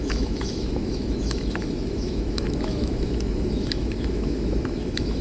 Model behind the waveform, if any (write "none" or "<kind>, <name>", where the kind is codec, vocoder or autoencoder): autoencoder, DAC-VAE